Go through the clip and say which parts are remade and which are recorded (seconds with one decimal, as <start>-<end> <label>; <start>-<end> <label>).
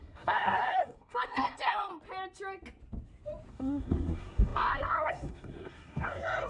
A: 0.0-1.9 remade; 1.9-3.5 recorded; 3.5-6.5 remade